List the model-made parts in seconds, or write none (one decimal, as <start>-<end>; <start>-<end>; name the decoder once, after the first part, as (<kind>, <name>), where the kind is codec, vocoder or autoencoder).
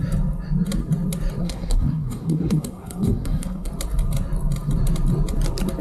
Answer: 1.4-3.7 (codec, SNAC)